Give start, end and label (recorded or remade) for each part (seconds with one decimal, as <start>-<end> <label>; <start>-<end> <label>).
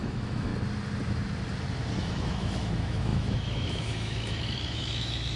0.0-0.5 remade; 0.5-2.0 recorded; 2.0-5.4 remade